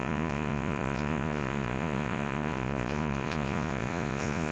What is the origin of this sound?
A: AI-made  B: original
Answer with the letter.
A